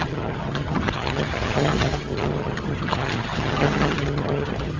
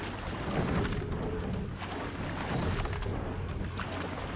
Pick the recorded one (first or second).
second